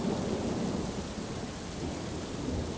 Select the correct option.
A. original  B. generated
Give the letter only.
A